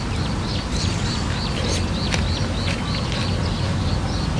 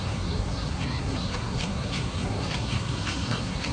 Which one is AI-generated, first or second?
second